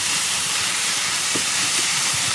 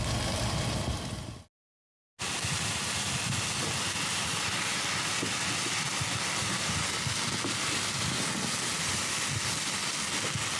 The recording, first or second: second